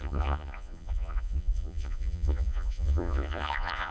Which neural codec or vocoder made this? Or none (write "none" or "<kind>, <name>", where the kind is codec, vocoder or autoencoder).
vocoder, Vocos